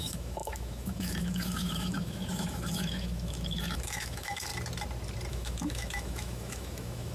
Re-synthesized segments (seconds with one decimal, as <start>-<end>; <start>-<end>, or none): 0.0-4.5; 5.3-7.1